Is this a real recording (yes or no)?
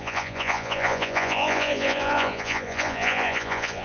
no